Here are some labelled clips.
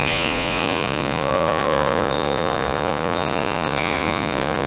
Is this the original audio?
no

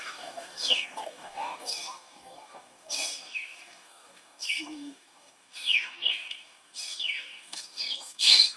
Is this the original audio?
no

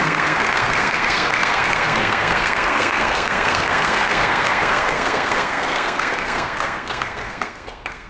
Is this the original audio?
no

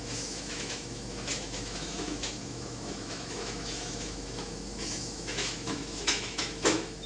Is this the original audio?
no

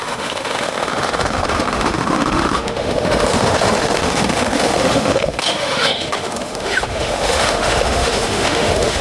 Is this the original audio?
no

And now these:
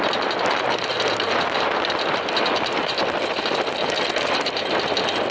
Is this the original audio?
yes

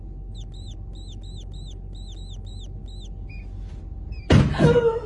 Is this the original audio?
yes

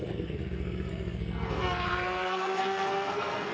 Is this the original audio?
no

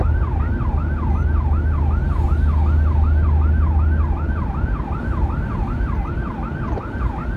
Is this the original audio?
yes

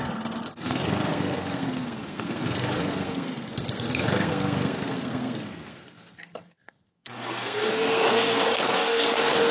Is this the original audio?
no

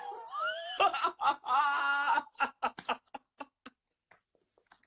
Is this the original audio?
yes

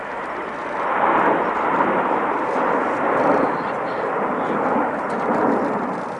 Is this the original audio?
yes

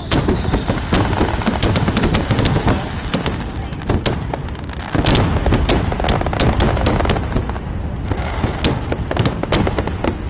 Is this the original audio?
yes